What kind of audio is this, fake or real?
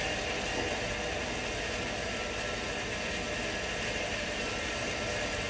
real